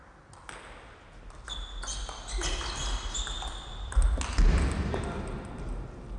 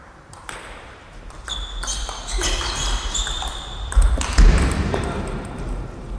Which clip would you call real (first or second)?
first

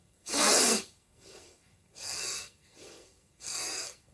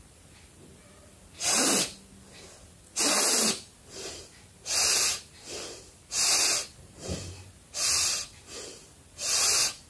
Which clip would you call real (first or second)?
second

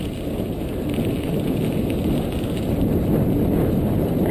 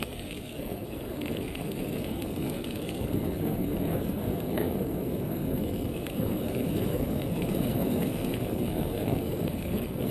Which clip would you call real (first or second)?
first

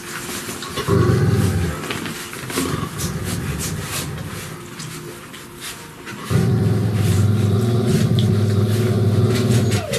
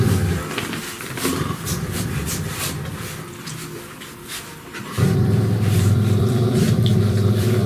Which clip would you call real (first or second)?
first